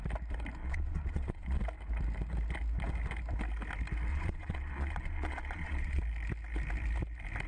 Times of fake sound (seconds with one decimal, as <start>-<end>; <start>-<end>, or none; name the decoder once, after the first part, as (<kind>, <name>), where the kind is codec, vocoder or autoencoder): 0.6-1.6 (vocoder, Vocos); 4.1-6.0